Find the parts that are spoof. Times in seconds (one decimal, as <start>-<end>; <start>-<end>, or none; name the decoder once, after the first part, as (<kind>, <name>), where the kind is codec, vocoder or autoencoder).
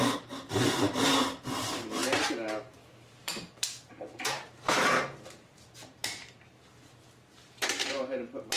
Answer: 0.0-2.0 (vocoder, BigVGAN v2); 2.6-8.6